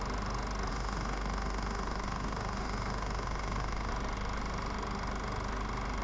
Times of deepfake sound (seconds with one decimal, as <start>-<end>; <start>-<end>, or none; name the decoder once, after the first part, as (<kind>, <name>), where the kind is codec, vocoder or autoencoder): 0.7-3.9 (autoencoder, DAC-VAE)